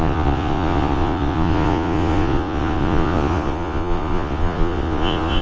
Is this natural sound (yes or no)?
no